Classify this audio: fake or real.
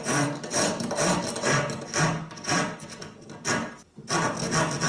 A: real